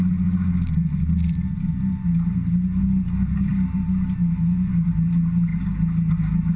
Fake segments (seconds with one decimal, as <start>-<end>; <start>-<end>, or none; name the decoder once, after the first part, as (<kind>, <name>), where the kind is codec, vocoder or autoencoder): none